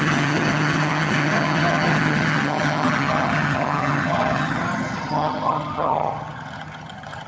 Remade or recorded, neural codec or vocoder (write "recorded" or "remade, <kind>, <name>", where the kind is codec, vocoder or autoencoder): remade, vocoder, HiFi-GAN